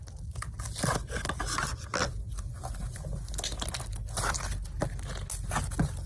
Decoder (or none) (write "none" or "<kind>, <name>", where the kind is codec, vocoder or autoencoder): none